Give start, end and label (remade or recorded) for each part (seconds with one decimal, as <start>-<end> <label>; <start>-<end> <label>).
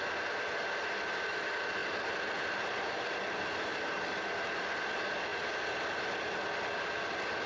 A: 0.0-7.5 recorded